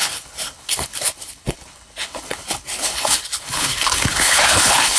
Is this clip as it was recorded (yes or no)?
no